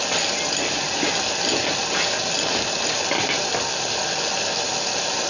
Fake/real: real